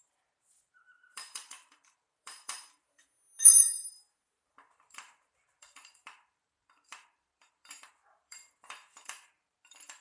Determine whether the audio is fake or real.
fake